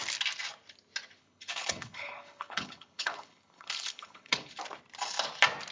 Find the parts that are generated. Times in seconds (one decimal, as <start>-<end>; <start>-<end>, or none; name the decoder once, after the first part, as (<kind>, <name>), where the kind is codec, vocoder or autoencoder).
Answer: 1.2-4.6 (codec, HILCodec)